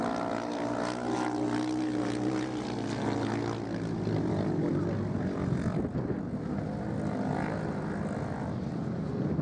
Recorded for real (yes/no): yes